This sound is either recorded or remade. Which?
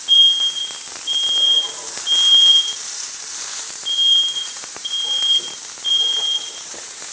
remade